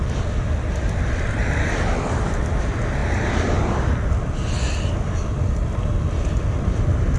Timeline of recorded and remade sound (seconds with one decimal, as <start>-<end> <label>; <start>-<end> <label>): 0.0-3.0 remade; 3.0-6.7 recorded; 6.7-7.2 remade